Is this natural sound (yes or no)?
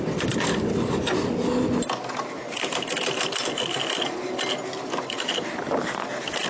yes